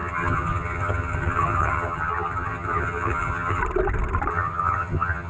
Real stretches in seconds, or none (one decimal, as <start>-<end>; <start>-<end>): 3.6-4.3